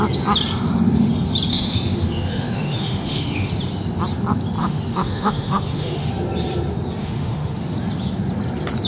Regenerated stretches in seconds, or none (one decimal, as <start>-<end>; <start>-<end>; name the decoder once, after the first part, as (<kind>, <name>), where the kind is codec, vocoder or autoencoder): 1.5-3.5 (autoencoder, DAC-VAE); 4.6-6.1; 7.0-7.6

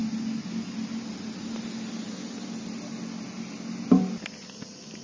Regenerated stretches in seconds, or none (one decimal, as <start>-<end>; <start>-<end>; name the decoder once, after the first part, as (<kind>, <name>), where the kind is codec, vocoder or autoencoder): none

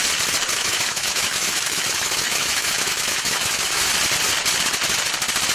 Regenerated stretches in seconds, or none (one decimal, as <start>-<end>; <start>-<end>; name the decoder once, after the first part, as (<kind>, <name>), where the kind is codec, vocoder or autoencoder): 0.5-3.8 (autoencoder, DAC-VAE)

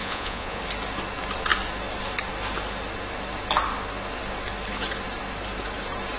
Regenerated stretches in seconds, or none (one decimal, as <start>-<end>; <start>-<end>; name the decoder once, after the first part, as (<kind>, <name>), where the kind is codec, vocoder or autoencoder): 0.0-0.6 (vocoder, Vocos)

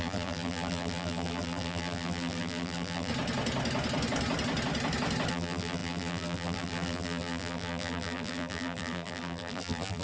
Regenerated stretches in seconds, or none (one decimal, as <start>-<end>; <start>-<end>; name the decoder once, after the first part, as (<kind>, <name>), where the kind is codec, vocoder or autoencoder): 0.0-3.1 (vocoder, BigVGAN v2); 5.3-10.0

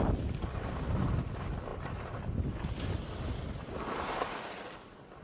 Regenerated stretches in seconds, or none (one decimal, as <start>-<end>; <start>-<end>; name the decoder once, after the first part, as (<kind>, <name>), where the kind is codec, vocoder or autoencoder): none

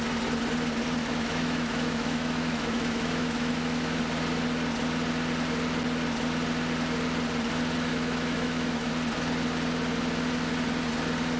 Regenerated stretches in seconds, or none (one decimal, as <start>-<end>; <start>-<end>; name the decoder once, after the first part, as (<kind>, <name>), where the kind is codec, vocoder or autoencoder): 1.0-4.0 (autoencoder, DAC-VAE); 7.9-8.9